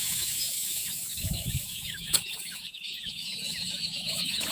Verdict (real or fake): fake